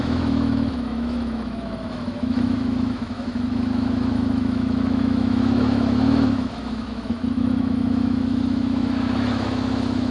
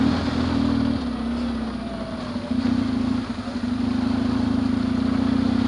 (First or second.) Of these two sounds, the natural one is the second